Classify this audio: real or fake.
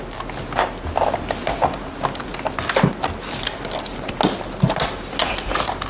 real